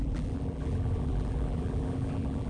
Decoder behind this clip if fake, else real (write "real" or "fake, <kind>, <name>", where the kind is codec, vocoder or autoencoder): fake, vocoder, BigVGAN v2